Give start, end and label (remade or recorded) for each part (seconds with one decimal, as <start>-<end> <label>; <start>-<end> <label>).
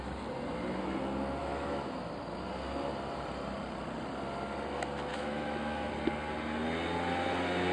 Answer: 0.0-1.4 recorded; 1.4-2.1 remade; 2.1-5.1 recorded; 5.1-5.9 remade; 5.9-7.7 recorded